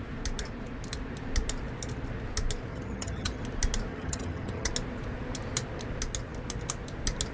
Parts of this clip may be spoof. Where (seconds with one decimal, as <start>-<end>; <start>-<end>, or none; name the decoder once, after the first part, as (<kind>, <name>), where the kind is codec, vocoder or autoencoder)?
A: 2.7-3.4 (vocoder, HiFi-GAN); 3.9-4.7